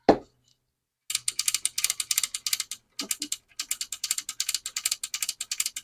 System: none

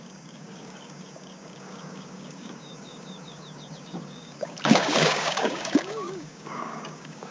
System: codec, DAC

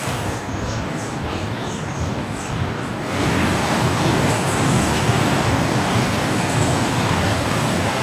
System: codec, DAC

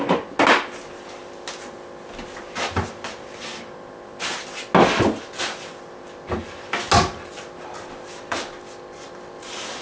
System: none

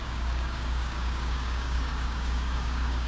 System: codec, DAC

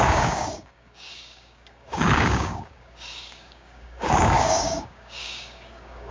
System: codec, DAC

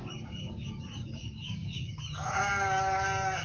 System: codec, DAC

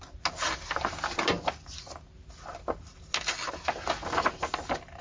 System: none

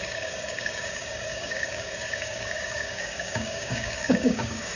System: codec, DAC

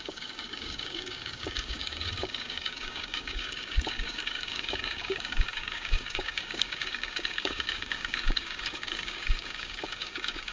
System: codec, DAC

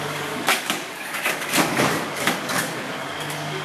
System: codec, DAC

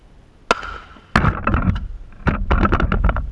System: none